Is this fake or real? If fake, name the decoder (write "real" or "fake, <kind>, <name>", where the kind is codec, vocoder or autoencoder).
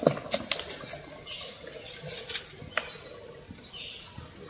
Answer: real